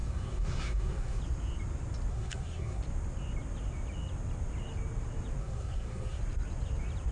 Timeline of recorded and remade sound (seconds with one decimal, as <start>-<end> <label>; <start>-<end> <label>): 0.0-1.2 remade; 1.2-2.1 recorded; 2.1-2.8 remade; 2.8-5.4 recorded; 5.4-6.2 remade; 6.2-7.1 recorded